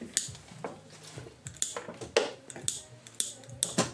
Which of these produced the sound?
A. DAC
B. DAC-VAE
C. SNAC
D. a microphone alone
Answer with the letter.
D